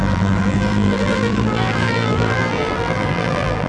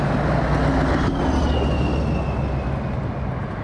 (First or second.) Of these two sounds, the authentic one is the second